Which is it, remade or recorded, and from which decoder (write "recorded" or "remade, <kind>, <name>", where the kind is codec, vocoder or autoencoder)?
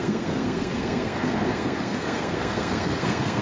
remade, codec, SNAC